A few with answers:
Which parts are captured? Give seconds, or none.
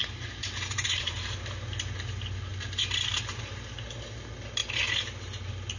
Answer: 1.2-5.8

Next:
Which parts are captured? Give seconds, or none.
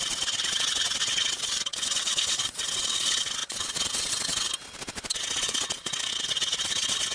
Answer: 4.5-5.1